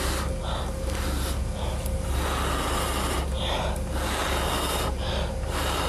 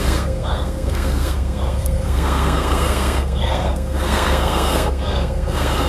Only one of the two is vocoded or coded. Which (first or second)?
second